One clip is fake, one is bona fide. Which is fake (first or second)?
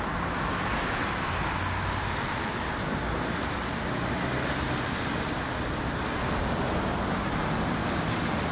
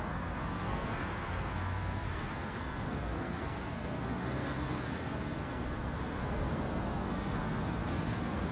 second